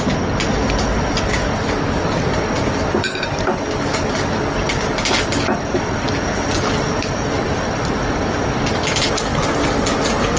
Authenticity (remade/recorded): recorded